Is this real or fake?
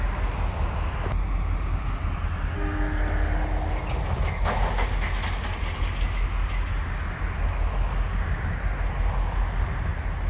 real